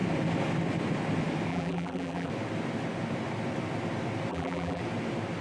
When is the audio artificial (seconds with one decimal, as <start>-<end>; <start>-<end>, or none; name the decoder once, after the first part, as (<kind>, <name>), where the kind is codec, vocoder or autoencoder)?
1.5-2.3 (vocoder, BigVGAN v2); 4.3-4.8